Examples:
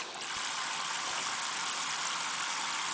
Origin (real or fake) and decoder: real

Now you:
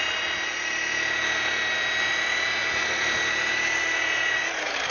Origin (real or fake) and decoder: real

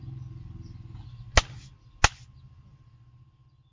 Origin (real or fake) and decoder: real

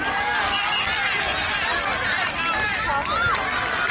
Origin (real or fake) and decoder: real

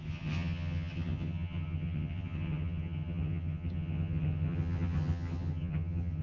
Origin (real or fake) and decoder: fake, vocoder, HiFi-GAN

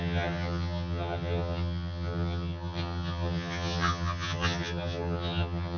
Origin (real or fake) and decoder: fake, vocoder, HiFi-GAN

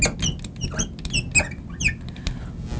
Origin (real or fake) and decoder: real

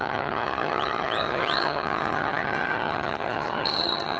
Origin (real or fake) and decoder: fake, vocoder, HiFi-GAN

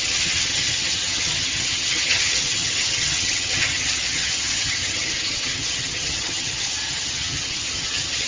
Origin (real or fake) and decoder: fake, vocoder, HiFi-GAN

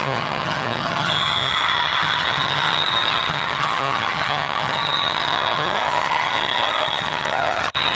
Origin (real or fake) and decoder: fake, vocoder, HiFi-GAN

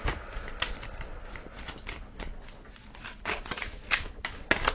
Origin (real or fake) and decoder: real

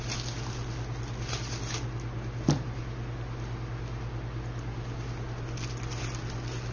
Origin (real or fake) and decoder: real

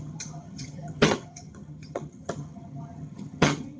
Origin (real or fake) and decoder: fake, vocoder, HiFi-GAN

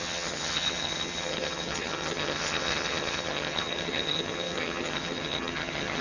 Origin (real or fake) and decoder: fake, vocoder, HiFi-GAN